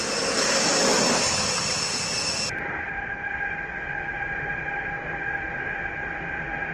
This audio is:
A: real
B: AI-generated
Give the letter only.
A